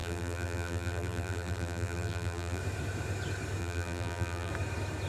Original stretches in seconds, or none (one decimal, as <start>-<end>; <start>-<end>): 2.6-3.6; 4.5-5.1

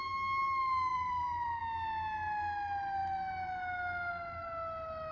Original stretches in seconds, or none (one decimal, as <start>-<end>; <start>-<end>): 0.0-0.9; 1.6-5.1

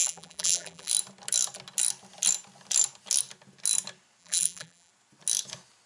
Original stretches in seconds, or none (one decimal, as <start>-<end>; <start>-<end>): 0.9-4.2; 4.9-5.9

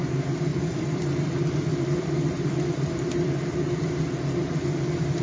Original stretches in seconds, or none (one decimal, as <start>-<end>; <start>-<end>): 0.0-0.5; 1.0-1.7; 4.0-5.2

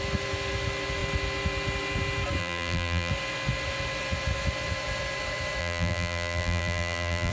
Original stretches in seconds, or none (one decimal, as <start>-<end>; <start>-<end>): 0.0-2.4; 3.1-5.6

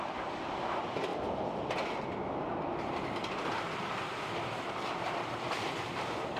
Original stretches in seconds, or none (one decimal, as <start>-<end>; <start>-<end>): 1.1-4.9

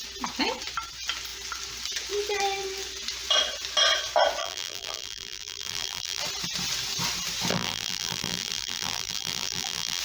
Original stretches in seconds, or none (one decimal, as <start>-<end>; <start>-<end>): 0.0-4.4; 6.2-7.5

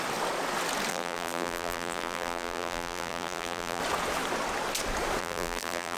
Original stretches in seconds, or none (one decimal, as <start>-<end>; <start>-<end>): 0.0-0.9; 3.8-5.2